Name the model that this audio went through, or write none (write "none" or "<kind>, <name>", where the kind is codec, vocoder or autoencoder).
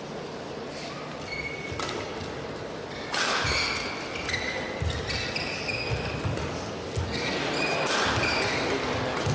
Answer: none